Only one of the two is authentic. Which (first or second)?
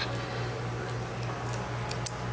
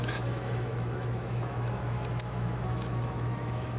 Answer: first